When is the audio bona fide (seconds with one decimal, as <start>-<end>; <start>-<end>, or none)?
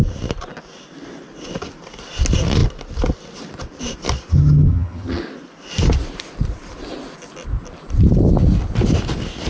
0.0-4.3; 5.2-9.5